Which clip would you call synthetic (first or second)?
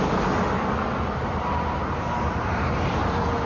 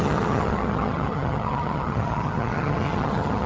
second